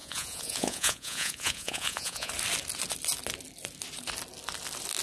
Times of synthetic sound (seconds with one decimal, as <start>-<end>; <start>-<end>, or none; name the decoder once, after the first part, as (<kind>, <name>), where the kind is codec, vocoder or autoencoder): 0.0-2.3 (vocoder, Vocos)